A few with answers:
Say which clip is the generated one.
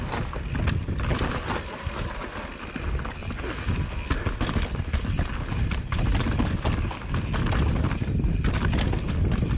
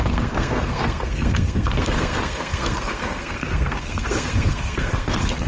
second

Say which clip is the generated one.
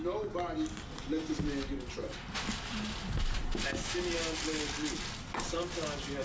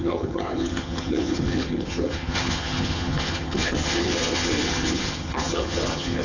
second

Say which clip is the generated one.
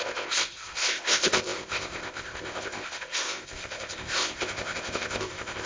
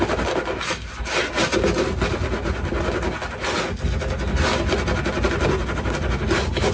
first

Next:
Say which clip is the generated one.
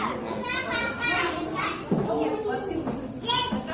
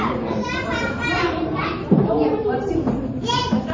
second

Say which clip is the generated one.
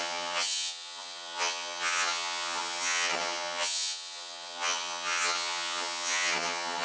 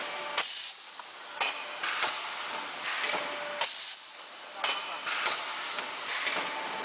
first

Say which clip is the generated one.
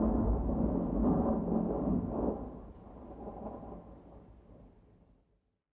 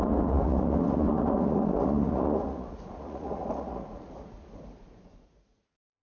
second